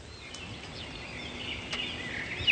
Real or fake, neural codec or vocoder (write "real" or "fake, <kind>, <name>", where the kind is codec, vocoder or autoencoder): real